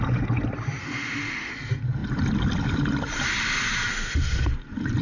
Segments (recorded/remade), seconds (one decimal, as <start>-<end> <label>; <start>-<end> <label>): 0.0-0.8 recorded; 0.8-1.5 remade; 1.5-3.9 recorded; 3.9-4.5 remade; 4.5-5.0 recorded